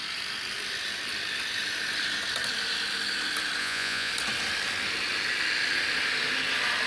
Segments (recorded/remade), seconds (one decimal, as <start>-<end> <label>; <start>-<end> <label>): 0.0-3.6 recorded; 3.6-4.1 remade; 4.1-6.9 recorded